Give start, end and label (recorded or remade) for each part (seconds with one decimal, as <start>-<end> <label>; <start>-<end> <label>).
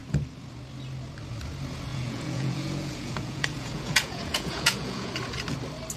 0.0-1.9 recorded; 1.9-5.1 remade; 5.1-6.0 recorded